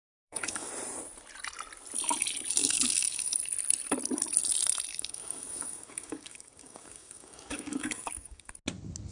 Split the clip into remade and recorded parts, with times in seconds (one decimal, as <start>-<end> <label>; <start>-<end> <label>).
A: 0.0-0.7 remade; 0.7-2.6 recorded; 2.6-3.3 remade; 3.3-4.9 recorded; 4.9-8.5 remade; 8.5-9.1 recorded